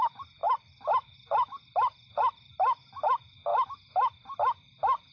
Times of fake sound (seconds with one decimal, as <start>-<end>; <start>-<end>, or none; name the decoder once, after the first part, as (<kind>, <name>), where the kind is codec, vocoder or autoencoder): none